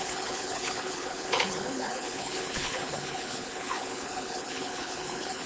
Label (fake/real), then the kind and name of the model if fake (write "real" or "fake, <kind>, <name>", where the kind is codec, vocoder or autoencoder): fake, codec, HILCodec